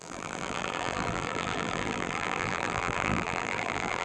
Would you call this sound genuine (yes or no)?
no